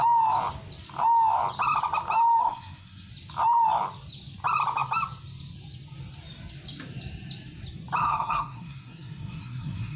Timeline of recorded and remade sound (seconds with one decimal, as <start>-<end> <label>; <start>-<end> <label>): 0.0-2.4 recorded; 2.4-3.1 remade; 3.1-8.0 recorded; 8.0-10.0 remade